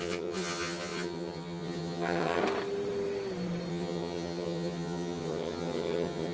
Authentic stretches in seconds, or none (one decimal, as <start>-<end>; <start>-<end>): 2.4-3.7